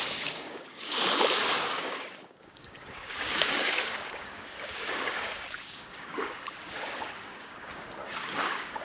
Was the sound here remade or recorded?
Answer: remade